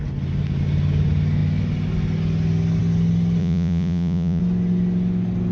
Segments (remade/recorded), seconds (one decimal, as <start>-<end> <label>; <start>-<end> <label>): 0.0-3.4 recorded; 3.4-4.4 remade; 4.4-5.5 recorded